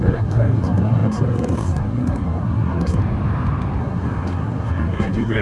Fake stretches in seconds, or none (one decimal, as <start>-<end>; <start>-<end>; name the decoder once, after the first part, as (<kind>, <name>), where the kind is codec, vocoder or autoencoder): 0.0-3.0 (codec, SNAC); 3.8-5.4